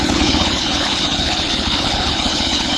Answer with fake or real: fake